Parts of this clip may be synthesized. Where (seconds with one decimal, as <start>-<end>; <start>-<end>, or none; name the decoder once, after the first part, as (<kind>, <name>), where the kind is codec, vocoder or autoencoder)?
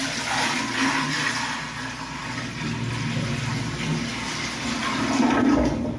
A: none